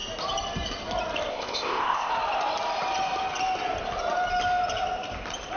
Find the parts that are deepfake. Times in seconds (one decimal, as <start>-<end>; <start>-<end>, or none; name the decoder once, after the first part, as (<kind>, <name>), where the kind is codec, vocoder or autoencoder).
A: 1.3-2.1 (codec, ZipCodec)